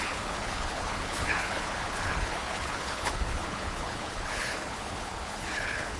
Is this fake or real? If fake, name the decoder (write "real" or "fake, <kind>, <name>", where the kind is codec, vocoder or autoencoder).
fake, codec, HILCodec